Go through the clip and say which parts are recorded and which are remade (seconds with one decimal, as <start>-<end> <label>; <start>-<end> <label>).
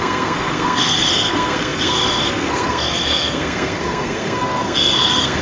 0.0-5.4 remade